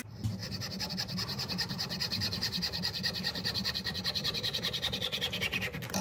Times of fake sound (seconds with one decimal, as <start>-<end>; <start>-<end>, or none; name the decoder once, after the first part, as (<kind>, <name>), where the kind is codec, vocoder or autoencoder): 0.4-0.9 (vocoder, BigVGAN v2); 1.3-4.9